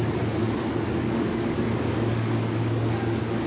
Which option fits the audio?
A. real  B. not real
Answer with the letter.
B